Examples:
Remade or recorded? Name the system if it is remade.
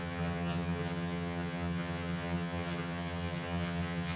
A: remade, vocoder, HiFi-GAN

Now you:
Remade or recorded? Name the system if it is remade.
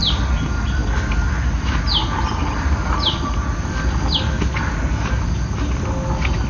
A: recorded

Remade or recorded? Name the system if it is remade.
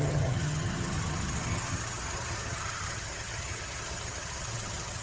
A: remade, vocoder, HiFi-GAN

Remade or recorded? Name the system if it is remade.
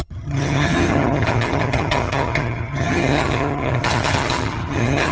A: remade, vocoder, HiFi-GAN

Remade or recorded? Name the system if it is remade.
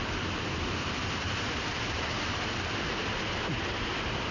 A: recorded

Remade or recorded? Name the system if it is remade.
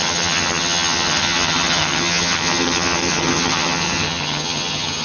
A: remade, vocoder, HiFi-GAN